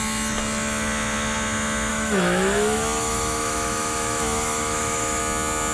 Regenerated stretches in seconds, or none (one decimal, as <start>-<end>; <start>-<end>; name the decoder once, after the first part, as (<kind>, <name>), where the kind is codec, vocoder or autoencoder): 1.9-5.2 (autoencoder, DAC-VAE)

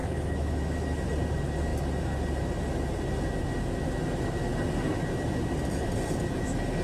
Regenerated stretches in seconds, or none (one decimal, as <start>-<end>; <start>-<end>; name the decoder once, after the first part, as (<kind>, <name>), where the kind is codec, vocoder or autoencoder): 0.0-1.1 (autoencoder, DAC-VAE)

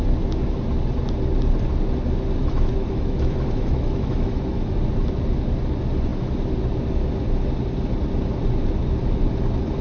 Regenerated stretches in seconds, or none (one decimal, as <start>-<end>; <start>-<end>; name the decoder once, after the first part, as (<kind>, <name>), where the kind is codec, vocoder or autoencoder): 2.4-4.8 (autoencoder, DAC-VAE)

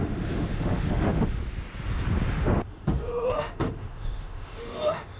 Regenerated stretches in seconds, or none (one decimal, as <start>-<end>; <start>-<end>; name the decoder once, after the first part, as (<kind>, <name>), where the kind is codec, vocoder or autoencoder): 0.0-1.4 (autoencoder, DAC-VAE); 2.3-5.2